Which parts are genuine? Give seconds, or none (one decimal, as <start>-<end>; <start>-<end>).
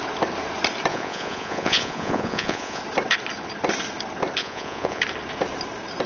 0.0-0.9; 2.8-4.4; 5.0-6.1